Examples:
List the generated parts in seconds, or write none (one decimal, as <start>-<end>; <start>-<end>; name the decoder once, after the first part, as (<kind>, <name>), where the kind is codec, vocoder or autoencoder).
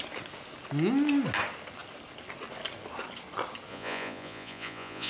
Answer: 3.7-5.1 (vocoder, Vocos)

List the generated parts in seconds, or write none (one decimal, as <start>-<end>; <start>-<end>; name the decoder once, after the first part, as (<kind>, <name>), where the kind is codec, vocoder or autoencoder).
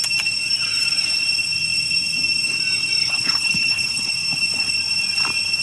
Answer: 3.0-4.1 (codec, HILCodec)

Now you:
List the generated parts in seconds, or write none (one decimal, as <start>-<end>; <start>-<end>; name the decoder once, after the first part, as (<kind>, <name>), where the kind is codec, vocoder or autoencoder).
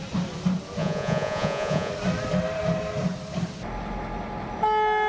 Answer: 0.8-1.9 (vocoder, Vocos)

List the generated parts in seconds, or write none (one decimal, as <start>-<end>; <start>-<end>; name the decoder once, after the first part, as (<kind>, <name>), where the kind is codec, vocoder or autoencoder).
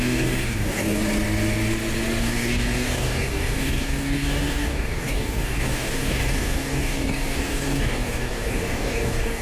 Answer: 0.0-1.0 (codec, DAC); 2.2-9.4